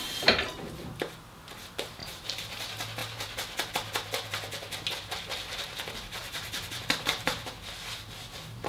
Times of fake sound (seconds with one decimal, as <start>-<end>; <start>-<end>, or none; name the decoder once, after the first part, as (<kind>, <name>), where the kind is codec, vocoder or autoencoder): 2.0-2.6 (vocoder, BigVGAN v2); 6.2-7.3